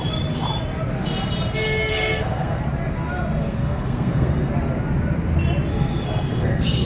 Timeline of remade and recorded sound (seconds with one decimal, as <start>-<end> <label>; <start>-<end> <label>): 0.0-1.9 recorded; 1.9-2.6 remade; 2.6-3.4 recorded; 3.4-4.5 remade; 4.5-5.7 recorded; 5.7-6.9 remade